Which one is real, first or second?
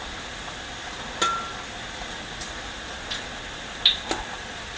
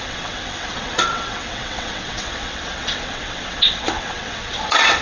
first